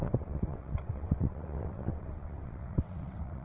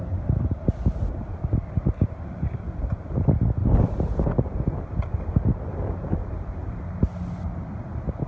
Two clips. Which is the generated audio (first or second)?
first